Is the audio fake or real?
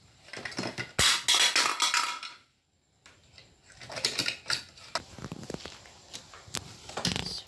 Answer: real